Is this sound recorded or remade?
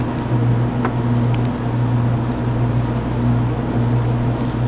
recorded